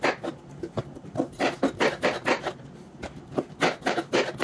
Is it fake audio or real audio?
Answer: real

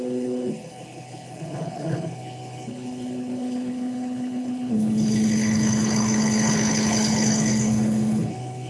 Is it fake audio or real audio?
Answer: fake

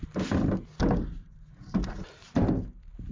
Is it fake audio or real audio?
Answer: real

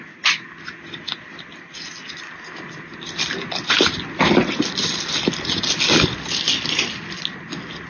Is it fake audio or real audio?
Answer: real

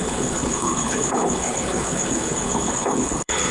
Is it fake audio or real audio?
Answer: fake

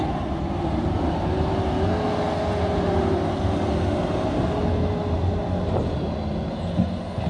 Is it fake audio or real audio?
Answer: real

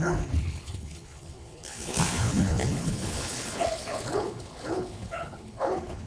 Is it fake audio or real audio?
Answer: fake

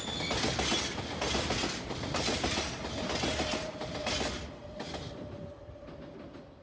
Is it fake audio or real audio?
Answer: real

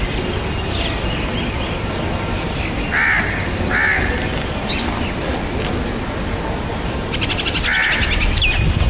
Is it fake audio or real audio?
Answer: real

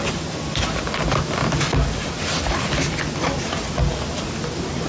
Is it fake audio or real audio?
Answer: real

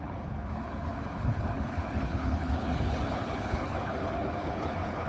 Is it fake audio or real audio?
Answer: fake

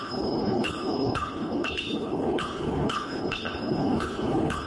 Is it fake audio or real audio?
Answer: fake